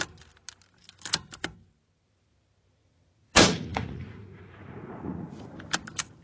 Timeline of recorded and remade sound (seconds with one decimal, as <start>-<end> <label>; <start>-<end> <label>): 0.0-2.8 recorded; 2.8-5.5 remade; 5.5-6.2 recorded